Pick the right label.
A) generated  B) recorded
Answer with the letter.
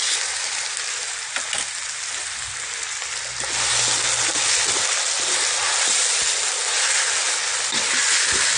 B